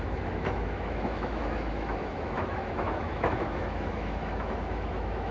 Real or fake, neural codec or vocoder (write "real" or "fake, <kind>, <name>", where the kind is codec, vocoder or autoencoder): fake, autoencoder, DAC-VAE